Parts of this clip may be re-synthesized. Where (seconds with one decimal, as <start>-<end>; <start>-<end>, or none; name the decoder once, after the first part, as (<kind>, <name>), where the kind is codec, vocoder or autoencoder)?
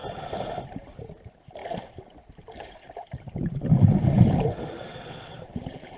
0.0-1.6 (vocoder, BigVGAN v2); 5.2-6.0